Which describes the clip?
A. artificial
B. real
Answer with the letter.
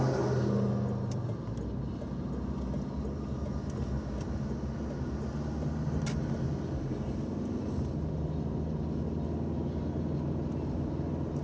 B